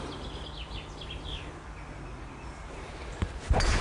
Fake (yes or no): no